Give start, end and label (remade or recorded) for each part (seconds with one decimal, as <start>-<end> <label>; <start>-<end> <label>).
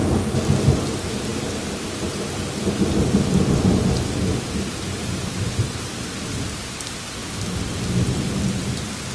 0.0-9.1 recorded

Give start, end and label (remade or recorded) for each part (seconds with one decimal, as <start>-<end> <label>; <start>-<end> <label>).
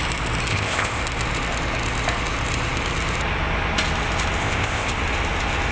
0.0-0.5 recorded; 0.5-1.0 remade; 1.0-4.4 recorded; 4.4-4.9 remade; 4.9-5.7 recorded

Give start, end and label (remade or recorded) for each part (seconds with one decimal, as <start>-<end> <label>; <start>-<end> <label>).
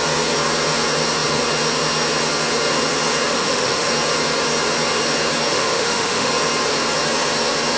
0.0-3.3 recorded; 3.3-3.9 remade; 3.9-5.5 recorded; 5.5-6.3 remade; 6.3-7.8 recorded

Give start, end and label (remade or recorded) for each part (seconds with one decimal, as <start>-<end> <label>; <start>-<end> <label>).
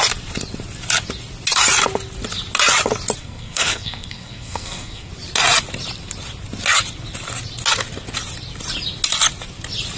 0.0-3.2 recorded; 3.2-5.1 remade; 5.1-10.0 recorded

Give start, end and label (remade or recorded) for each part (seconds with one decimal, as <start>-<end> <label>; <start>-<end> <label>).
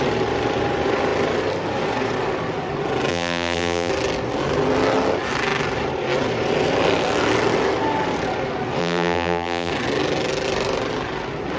0.0-3.1 recorded; 3.1-3.9 remade; 3.9-8.8 recorded; 8.8-9.7 remade; 9.7-11.6 recorded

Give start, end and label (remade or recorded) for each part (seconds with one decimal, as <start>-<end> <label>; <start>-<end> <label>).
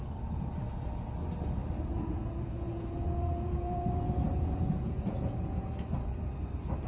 0.0-1.6 recorded; 1.6-5.7 remade; 5.7-6.9 recorded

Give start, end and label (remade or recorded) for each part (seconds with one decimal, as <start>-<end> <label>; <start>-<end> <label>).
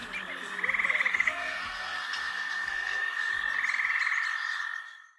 0.0-1.1 recorded; 1.1-3.3 remade; 3.3-4.8 recorded; 4.8-5.2 remade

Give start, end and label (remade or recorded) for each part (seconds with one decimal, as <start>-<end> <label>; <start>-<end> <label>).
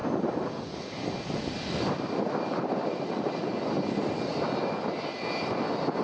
0.0-6.0 recorded